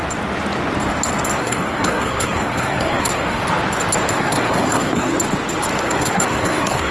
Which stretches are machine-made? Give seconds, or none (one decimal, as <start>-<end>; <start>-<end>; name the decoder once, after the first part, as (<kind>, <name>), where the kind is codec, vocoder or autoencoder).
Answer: 1.4-3.4 (codec, SNAC); 4.1-5.1; 5.7-6.9